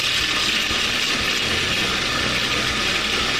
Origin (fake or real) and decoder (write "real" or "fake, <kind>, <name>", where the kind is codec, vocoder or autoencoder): real